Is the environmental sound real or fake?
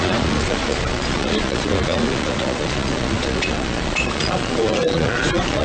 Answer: fake